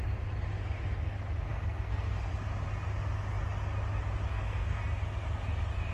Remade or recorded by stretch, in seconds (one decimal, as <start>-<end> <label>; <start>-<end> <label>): 0.0-1.5 recorded; 1.5-2.3 remade; 2.3-4.3 recorded; 4.3-4.8 remade; 4.8-5.9 recorded